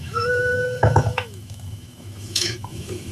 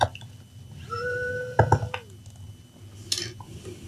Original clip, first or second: second